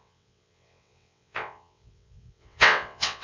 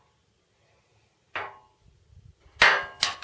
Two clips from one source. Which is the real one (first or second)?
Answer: second